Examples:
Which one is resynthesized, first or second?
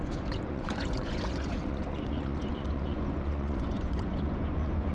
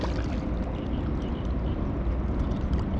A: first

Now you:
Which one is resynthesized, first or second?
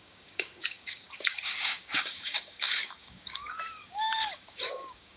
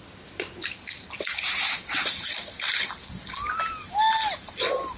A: first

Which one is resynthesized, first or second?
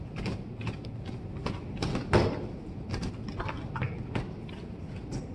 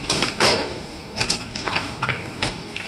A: second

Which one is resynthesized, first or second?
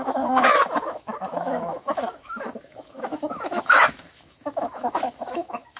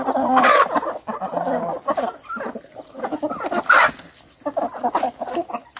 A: first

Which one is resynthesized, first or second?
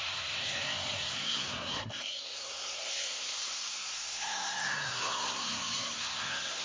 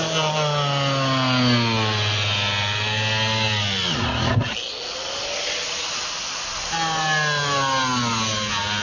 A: first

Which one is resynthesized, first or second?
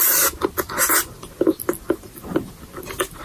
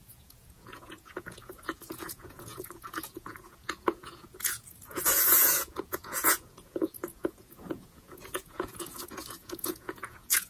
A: second